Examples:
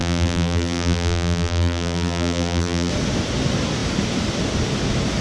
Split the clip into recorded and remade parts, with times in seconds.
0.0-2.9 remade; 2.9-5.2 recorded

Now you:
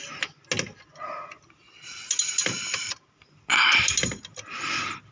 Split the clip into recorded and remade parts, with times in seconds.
0.0-5.1 recorded

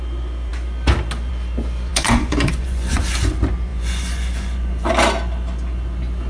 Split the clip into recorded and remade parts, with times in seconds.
0.0-1.9 recorded; 1.9-3.0 remade; 3.0-3.7 recorded; 3.7-4.9 remade; 4.9-6.3 recorded

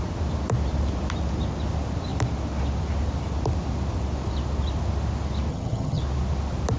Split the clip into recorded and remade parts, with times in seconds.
0.0-5.5 recorded; 5.5-6.0 remade; 6.0-6.8 recorded

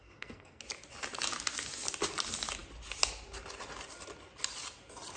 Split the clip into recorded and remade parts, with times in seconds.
0.0-0.6 remade; 0.6-5.2 recorded

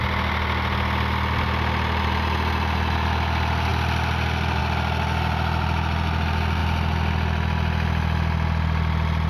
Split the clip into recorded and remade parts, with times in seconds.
0.0-9.3 recorded